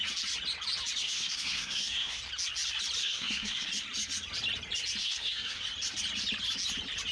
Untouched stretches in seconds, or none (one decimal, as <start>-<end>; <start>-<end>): 0.0-1.0; 2.2-3.0; 3.7-5.0; 5.6-7.1